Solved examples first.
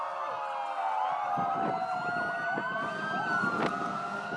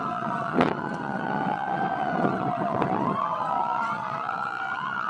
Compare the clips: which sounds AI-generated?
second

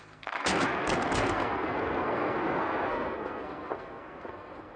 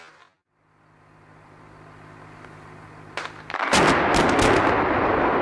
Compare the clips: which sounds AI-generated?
first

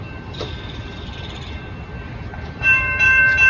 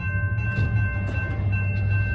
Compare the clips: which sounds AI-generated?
first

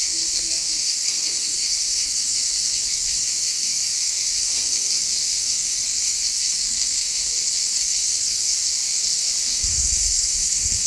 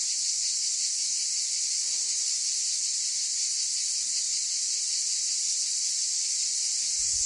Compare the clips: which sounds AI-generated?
first